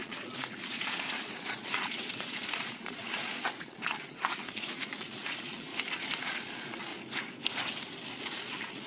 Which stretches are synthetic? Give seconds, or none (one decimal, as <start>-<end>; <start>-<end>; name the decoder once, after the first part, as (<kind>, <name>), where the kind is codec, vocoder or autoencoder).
0.0-5.7 (vocoder, Vocos); 6.2-6.9; 8.2-8.9